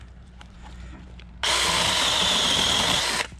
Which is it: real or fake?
fake